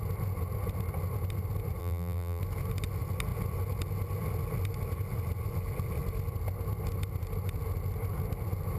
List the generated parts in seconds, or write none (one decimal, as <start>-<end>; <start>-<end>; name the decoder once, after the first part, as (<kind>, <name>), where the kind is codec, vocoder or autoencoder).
1.8-2.4 (vocoder, BigVGAN v2)